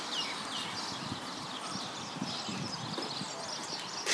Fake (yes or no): no